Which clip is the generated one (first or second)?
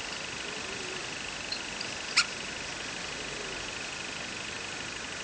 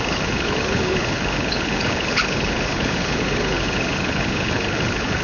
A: second